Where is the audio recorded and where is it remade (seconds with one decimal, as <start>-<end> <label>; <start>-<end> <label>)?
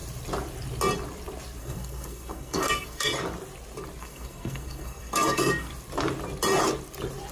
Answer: 0.0-1.6 recorded; 1.6-3.1 remade; 3.1-4.0 recorded; 4.0-5.7 remade; 5.7-7.3 recorded